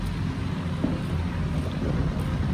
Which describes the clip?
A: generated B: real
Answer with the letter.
B